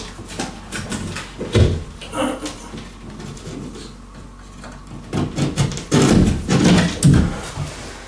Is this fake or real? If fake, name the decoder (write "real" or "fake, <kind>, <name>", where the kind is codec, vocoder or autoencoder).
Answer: real